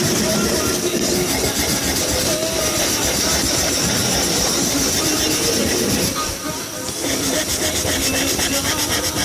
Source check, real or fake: real